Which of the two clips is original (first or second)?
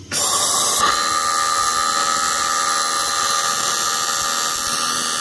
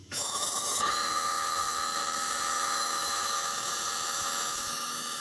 first